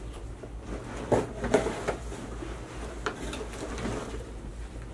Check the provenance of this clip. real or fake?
real